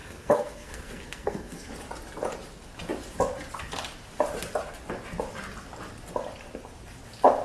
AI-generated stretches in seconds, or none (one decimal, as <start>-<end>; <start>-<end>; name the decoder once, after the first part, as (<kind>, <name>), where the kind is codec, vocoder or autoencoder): 0.0-1.7 (codec, SNAC)